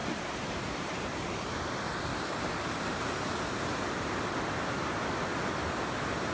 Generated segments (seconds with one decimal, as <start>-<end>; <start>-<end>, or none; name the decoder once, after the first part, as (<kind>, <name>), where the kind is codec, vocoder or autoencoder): 0.0-1.3 (vocoder, BigVGAN v2); 2.1-5.2